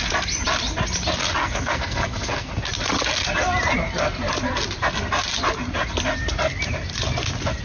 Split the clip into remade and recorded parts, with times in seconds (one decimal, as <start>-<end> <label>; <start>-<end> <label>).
0.0-1.4 recorded; 1.4-2.5 remade; 2.5-7.6 recorded